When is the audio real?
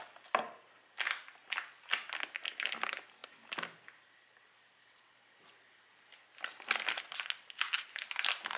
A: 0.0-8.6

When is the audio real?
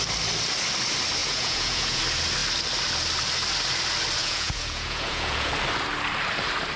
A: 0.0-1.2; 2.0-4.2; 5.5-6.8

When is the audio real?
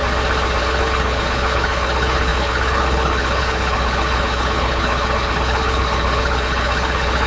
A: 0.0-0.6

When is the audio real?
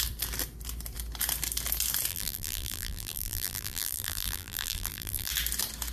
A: 0.0-2.1; 5.3-5.9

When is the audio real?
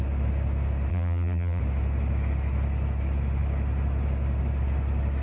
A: 0.0-0.9; 1.6-5.2